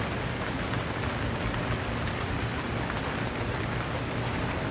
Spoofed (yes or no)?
no